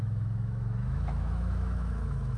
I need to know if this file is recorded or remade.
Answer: remade